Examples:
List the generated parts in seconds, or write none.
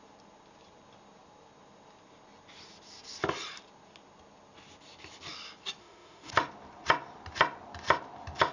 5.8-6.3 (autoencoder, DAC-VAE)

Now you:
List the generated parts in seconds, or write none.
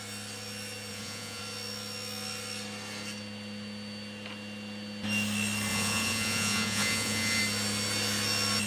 0.9-1.4 (vocoder, Vocos); 5.7-7.4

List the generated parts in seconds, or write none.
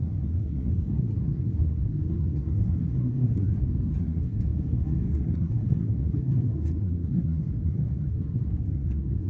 0.0-9.3 (codec, SNAC)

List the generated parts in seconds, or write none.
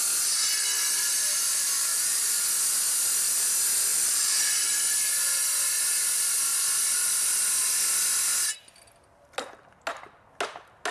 1.9-2.4 (vocoder, BigVGAN v2); 3.9-4.7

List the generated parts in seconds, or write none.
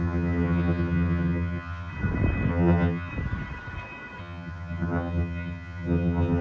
0.0-1.9 (vocoder, HiFi-GAN); 2.5-3.1; 4.2-6.4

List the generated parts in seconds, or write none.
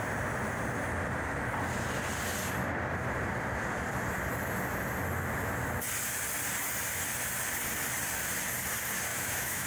9.1-9.7 (autoencoder, DAC-VAE)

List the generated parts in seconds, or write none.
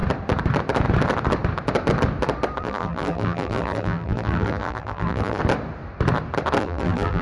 2.6-5.4 (vocoder, BigVGAN v2); 6.6-7.2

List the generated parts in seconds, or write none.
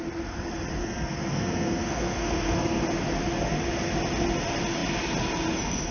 0.8-2.8 (codec, SNAC)